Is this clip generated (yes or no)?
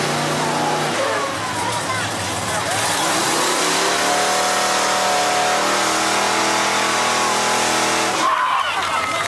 no